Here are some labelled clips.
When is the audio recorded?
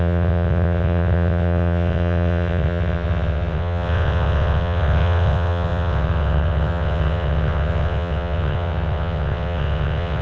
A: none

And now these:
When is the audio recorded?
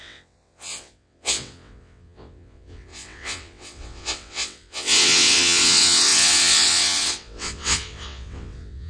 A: none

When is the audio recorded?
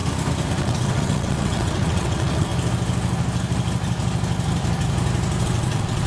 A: 0.0-0.6; 2.5-5.4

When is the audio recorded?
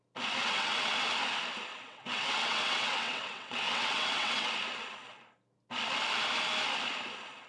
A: 0.0-0.4; 1.1-1.7; 4.5-7.5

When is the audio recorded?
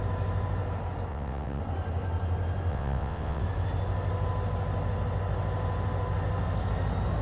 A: 0.0-1.1; 1.6-2.7; 3.4-7.2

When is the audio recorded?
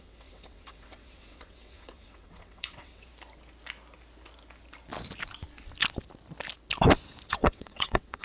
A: 3.1-7.3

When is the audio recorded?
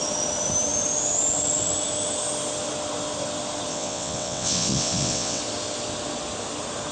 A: 0.0-3.7; 5.4-6.9